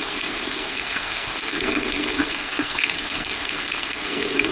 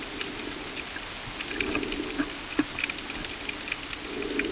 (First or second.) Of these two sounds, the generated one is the first